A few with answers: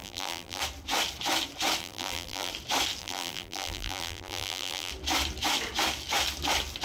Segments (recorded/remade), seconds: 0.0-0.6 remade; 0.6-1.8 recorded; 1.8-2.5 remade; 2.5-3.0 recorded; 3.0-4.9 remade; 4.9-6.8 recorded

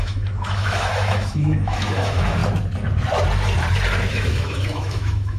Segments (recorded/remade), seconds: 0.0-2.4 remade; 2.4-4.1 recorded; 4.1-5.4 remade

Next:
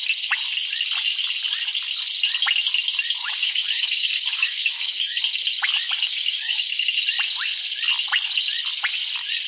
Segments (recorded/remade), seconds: 0.0-3.2 recorded; 3.2-5.2 remade; 5.2-6.1 recorded; 6.1-6.9 remade; 6.9-9.5 recorded

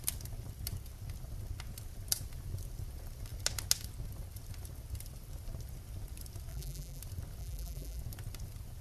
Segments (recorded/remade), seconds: 0.0-6.5 recorded; 6.5-7.0 remade; 7.0-7.4 recorded; 7.4-8.0 remade; 8.0-8.8 recorded

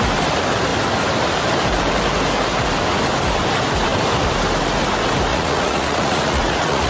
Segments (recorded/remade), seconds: 0.0-5.3 recorded; 5.3-6.9 remade

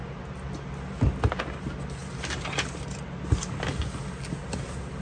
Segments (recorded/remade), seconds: 0.0-5.0 recorded